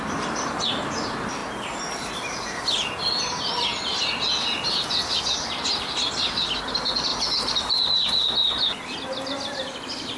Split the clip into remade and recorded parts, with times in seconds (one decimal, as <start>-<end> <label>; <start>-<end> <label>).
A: 0.0-7.1 recorded; 7.1-8.8 remade; 8.8-10.2 recorded